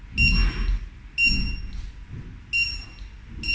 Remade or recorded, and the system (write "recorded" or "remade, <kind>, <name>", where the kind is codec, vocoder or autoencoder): recorded